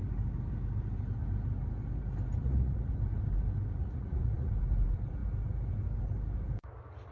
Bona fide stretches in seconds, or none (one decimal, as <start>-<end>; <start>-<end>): 0.0-2.4; 2.9-3.8; 4.5-7.1